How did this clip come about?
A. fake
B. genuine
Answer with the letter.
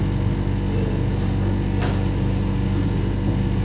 B